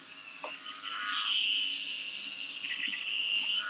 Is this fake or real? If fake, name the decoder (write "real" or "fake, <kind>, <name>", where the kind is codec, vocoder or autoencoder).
fake, codec, DAC